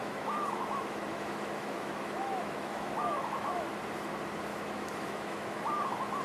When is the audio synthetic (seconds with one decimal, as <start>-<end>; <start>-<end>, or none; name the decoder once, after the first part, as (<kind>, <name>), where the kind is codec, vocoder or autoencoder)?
0.0-3.7 (autoencoder, DAC-VAE); 4.5-5.6